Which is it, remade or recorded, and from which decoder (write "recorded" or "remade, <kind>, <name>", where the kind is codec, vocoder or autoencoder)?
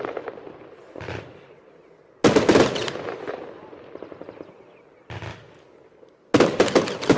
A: recorded